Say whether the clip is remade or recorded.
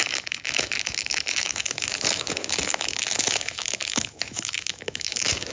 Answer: remade